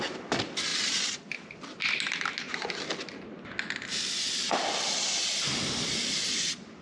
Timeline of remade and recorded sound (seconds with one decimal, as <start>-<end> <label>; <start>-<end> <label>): 0.0-6.8 recorded